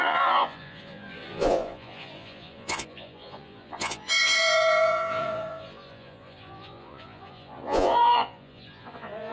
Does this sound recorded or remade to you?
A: remade